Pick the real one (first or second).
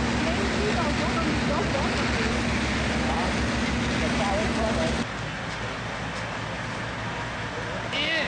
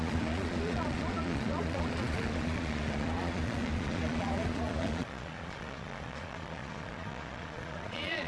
first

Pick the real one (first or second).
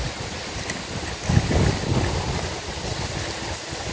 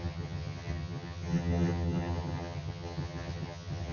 first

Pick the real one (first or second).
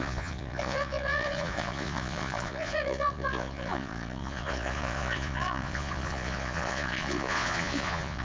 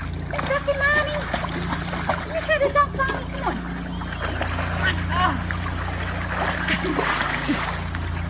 second